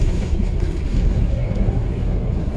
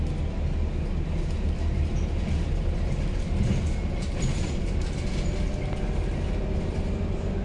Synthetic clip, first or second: first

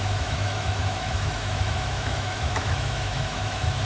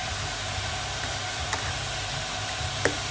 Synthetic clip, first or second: first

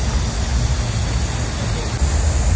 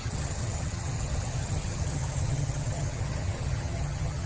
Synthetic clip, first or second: second